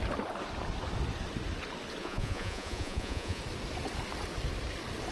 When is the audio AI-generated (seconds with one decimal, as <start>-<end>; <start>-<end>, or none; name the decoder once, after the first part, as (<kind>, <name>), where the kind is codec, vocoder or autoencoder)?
2.0-3.4 (vocoder, Vocos)